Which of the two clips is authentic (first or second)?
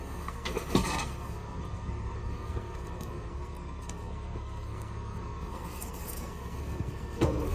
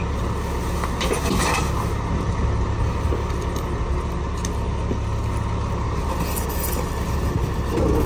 second